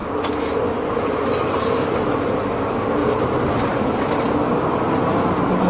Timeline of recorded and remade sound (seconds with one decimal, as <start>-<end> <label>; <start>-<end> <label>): 0.0-0.5 remade; 0.5-3.0 recorded; 3.0-4.6 remade; 4.6-5.7 recorded